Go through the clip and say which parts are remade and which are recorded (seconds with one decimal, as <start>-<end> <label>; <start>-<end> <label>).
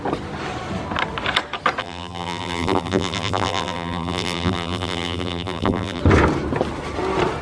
0.0-1.8 recorded; 1.8-6.0 remade; 6.0-7.4 recorded